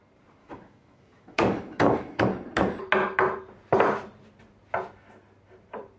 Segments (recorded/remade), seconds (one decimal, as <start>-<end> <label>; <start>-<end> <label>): 0.0-0.4 recorded; 0.4-2.2 remade; 2.2-6.0 recorded